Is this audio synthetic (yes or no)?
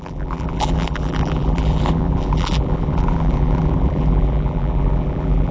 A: yes